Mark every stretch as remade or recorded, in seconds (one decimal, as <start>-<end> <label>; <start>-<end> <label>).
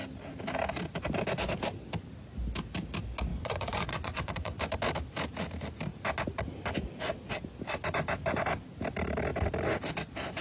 0.0-3.3 recorded; 3.3-4.6 remade; 4.6-10.4 recorded